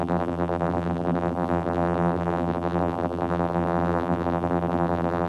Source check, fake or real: fake